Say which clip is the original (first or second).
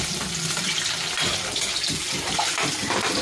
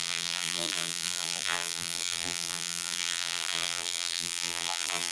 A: first